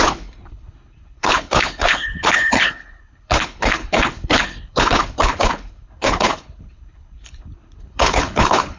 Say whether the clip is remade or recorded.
remade